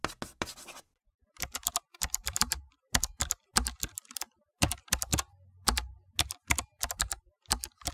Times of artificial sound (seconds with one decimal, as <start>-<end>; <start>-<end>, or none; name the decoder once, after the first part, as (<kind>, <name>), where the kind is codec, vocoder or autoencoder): 1.9-2.7 (vocoder, BigVGAN v2)